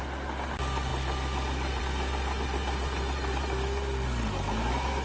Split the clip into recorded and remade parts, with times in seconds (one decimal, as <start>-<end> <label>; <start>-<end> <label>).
0.0-5.0 recorded